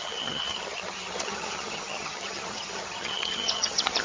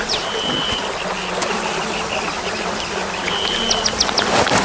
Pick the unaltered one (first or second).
second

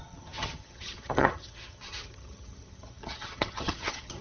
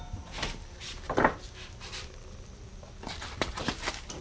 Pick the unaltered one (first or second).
second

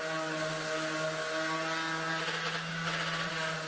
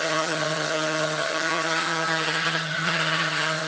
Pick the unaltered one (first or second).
first